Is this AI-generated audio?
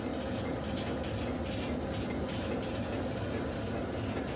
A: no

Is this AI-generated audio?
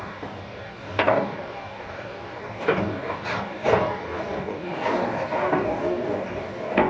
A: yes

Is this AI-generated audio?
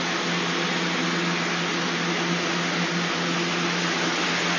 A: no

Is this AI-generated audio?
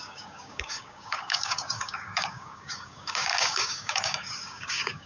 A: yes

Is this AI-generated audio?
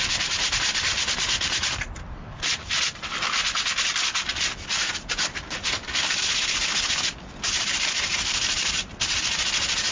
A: no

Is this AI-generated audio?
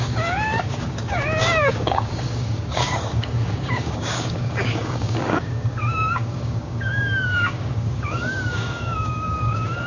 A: yes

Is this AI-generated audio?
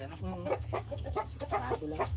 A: yes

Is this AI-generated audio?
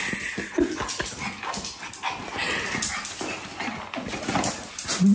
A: no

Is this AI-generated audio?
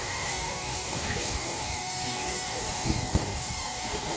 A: yes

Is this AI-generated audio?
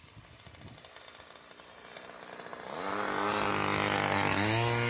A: no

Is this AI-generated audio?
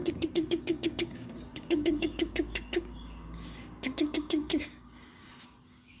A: yes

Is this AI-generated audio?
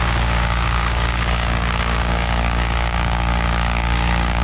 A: yes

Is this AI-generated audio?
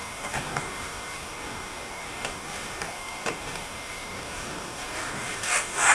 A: yes